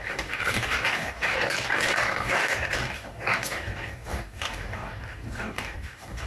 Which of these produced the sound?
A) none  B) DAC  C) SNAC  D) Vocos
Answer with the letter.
B